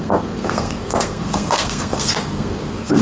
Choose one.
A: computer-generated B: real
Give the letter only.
A